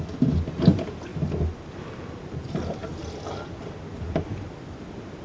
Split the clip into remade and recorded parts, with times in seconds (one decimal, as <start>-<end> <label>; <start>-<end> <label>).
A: 0.0-5.2 recorded